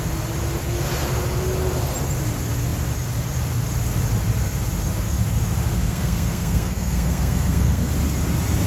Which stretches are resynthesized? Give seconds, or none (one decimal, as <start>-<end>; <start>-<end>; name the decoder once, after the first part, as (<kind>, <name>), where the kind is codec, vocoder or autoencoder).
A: 5.8-7.9 (codec, SNAC)